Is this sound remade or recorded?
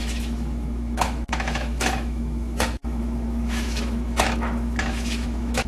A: remade